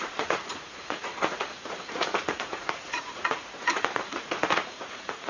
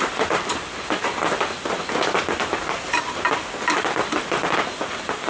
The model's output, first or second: first